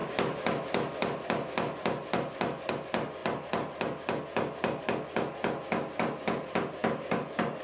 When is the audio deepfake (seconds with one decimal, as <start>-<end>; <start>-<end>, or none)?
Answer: none